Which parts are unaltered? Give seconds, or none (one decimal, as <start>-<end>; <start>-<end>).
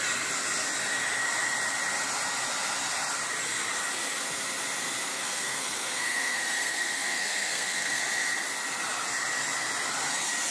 0.0-5.1; 8.0-10.5